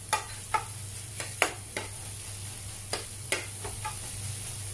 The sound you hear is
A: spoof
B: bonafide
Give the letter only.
B